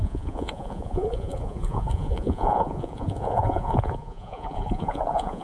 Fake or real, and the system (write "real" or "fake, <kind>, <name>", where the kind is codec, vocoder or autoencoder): fake, vocoder, Vocos